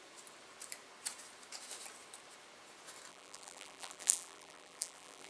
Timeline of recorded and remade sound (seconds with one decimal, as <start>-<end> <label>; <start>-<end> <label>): 0.0-3.1 recorded; 3.1-5.3 remade